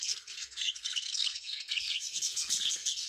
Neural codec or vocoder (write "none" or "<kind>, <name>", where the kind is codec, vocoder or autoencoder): codec, SNAC